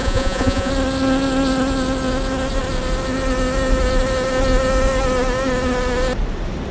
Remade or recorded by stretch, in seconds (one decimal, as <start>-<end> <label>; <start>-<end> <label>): 0.0-0.7 remade; 0.7-6.7 recorded

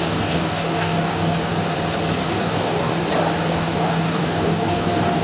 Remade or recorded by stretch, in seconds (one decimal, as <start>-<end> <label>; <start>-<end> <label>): 0.0-1.5 remade; 1.5-2.3 recorded; 2.3-2.9 remade; 2.9-3.5 recorded; 3.5-5.2 remade

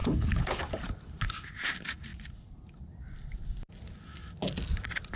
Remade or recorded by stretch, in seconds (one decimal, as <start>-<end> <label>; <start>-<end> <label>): 0.0-0.6 remade; 0.6-5.2 recorded

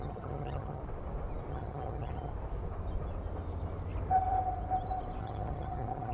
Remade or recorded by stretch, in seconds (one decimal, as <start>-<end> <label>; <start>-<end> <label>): 0.0-0.8 remade; 0.8-1.5 recorded; 1.5-2.3 remade; 2.3-5.2 recorded; 5.2-6.1 remade

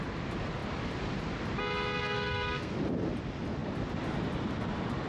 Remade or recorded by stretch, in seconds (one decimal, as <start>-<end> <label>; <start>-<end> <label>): 0.0-2.0 recorded; 2.0-2.7 remade; 2.7-5.1 recorded

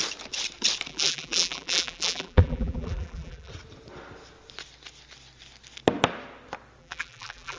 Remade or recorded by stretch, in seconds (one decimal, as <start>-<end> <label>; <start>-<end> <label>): 0.0-0.9 recorded; 0.9-3.5 remade; 3.5-6.8 recorded; 6.8-7.6 remade

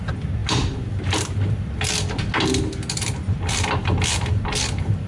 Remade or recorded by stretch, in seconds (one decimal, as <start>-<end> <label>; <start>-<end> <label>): 0.0-5.1 recorded